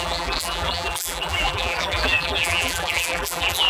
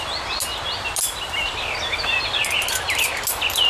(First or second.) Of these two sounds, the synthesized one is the first